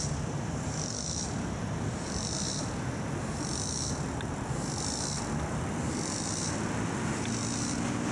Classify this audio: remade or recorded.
recorded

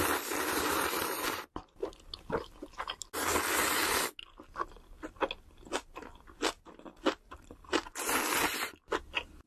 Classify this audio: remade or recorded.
recorded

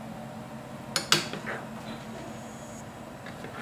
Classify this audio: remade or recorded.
recorded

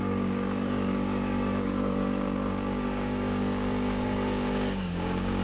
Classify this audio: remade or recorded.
remade